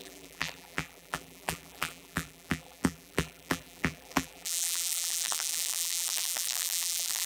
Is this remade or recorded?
remade